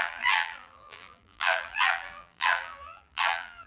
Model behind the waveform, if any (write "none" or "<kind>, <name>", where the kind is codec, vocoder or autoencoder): vocoder, BigVGAN v2